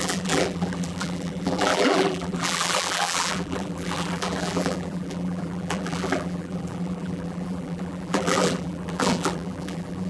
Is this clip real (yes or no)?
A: no